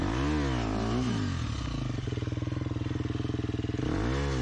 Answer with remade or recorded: recorded